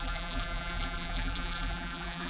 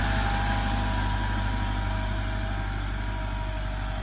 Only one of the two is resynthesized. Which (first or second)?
first